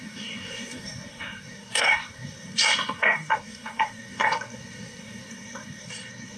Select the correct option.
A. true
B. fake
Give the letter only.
B